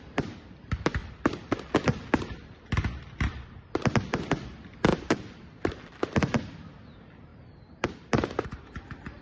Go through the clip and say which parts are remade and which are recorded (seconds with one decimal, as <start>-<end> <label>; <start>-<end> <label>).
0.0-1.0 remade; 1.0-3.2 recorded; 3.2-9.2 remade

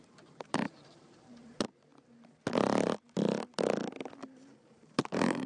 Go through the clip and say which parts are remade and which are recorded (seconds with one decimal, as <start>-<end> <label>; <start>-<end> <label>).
0.0-1.9 remade; 1.9-4.2 recorded; 4.2-5.5 remade

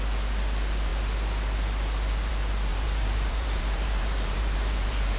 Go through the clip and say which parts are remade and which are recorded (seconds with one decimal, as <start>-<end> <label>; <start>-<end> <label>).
0.0-2.7 recorded; 2.7-5.2 remade

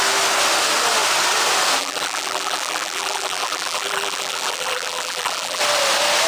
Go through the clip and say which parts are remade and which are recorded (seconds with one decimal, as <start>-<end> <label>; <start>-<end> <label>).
0.0-1.8 recorded; 1.8-5.6 remade; 5.6-6.3 recorded